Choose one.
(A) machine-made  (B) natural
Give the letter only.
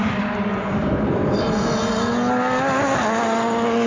B